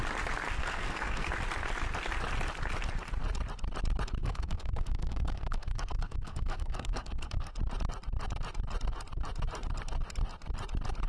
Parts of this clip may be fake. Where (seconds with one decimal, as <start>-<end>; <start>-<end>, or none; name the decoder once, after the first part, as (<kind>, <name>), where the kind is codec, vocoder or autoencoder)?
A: 0.6-1.3 (codec, SNAC); 4.2-7.5